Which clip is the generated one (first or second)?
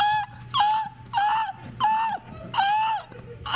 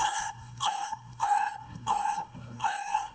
second